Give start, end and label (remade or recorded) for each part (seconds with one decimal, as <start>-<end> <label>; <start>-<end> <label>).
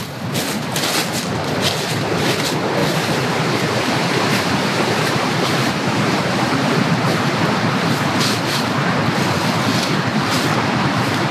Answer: 0.0-2.8 recorded; 2.8-6.9 remade; 6.9-10.1 recorded; 10.1-11.3 remade